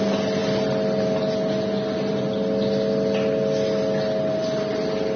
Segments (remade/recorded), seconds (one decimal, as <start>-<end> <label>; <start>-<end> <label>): 0.0-5.2 recorded